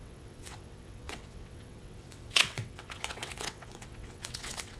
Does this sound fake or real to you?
fake